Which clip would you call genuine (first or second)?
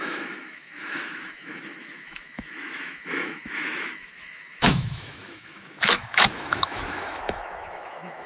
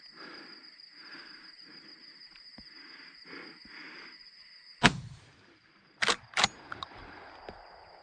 second